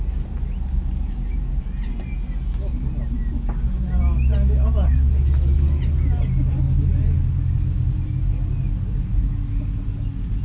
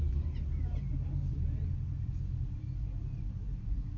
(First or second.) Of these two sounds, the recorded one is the first